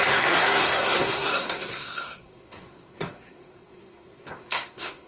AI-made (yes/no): yes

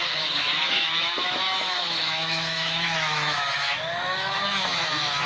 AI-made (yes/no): yes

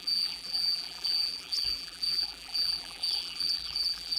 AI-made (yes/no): yes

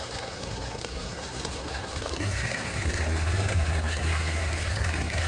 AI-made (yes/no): yes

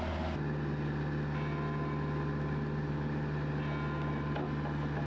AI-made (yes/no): no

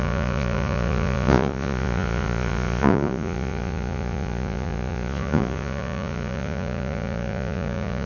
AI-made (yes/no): yes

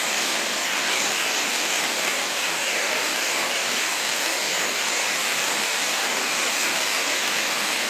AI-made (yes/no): yes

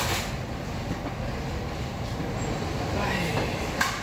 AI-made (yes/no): no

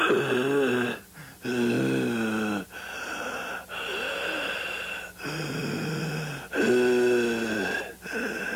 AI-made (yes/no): no